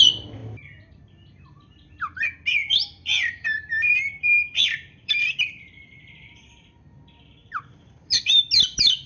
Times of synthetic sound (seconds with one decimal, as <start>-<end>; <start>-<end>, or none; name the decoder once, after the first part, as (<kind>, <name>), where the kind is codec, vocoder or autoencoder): 2.6-5.7 (vocoder, BigVGAN v2); 7.4-8.4